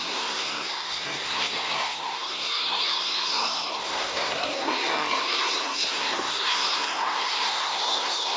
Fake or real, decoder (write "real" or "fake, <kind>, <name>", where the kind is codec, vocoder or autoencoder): fake, codec, SNAC